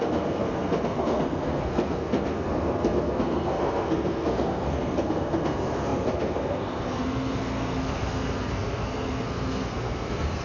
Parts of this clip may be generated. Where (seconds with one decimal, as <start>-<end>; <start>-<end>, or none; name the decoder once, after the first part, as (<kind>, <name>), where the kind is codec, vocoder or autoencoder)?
0.0-10.4 (codec, SNAC)